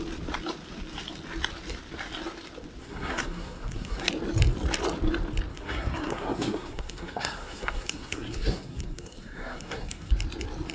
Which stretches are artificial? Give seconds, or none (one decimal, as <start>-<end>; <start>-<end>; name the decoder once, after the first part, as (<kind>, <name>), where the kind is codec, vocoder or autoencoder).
2.8-4.1 (codec, SNAC); 5.5-10.1